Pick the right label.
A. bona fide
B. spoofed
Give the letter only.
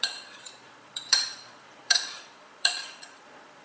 B